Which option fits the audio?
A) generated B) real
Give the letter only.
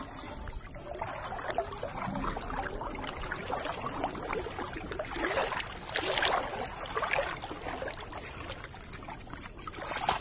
B